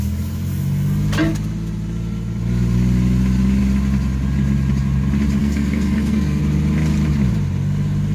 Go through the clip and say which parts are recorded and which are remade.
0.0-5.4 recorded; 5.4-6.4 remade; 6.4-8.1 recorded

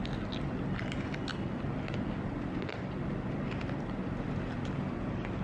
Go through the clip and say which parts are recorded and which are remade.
0.0-5.4 recorded

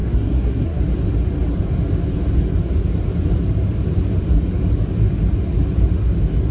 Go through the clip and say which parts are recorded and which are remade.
0.0-0.8 remade; 0.8-6.5 recorded

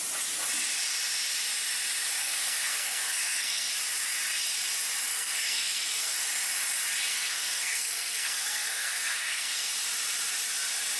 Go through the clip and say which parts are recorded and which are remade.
0.0-2.2 recorded; 2.2-3.7 remade; 3.7-5.1 recorded; 5.1-6.3 remade; 6.3-7.1 recorded; 7.1-9.7 remade; 9.7-11.0 recorded

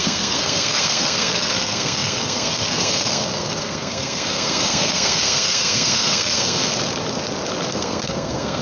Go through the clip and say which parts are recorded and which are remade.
0.0-6.7 remade; 6.7-7.7 recorded; 7.7-8.6 remade

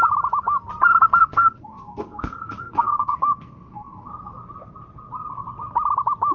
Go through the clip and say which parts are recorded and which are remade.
0.0-1.2 recorded; 1.2-4.1 remade; 4.1-6.3 recorded

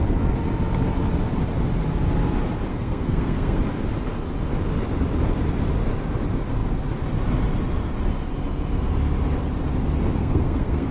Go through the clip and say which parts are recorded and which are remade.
0.0-2.7 recorded; 2.7-3.6 remade; 3.6-10.2 recorded; 10.2-10.9 remade

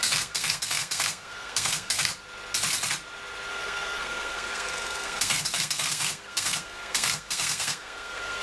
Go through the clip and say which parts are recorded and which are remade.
0.0-2.1 remade; 2.1-3.5 recorded; 3.5-8.4 remade